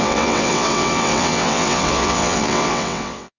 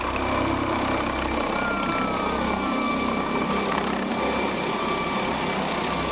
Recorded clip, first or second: second